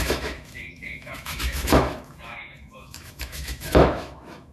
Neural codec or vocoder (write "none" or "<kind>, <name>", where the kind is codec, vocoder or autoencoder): autoencoder, DAC-VAE